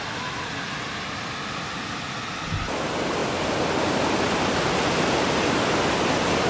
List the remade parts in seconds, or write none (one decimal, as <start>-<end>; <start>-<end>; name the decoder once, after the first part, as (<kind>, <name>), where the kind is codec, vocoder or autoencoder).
none